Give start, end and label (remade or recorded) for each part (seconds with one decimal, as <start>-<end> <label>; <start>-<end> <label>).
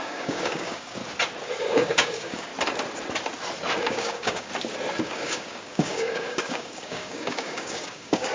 0.0-1.0 remade; 1.0-1.6 recorded; 1.6-2.5 remade; 2.5-3.8 recorded; 3.8-4.5 remade; 4.5-5.0 recorded; 5.0-8.3 remade